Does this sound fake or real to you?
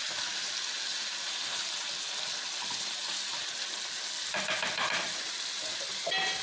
real